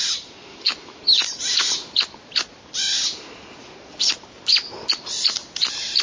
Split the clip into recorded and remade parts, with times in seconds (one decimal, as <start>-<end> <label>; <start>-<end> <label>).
0.0-0.5 recorded; 0.5-1.0 remade; 1.0-6.0 recorded